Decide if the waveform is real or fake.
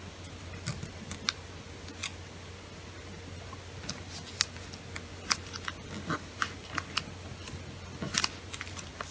real